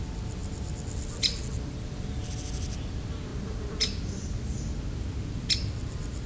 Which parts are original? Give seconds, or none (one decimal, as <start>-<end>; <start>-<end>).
0.0-6.3